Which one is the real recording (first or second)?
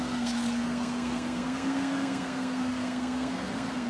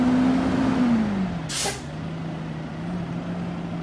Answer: second